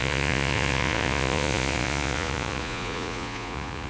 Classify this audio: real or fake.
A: fake